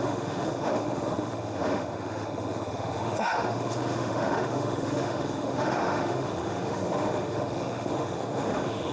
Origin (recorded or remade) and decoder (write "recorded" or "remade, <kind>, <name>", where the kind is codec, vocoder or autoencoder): remade, autoencoder, DAC-VAE